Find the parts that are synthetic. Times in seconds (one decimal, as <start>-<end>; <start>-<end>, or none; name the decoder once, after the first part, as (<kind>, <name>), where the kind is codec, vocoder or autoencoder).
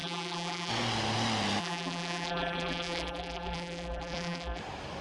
0.0-0.7 (vocoder, BigVGAN v2); 1.6-4.6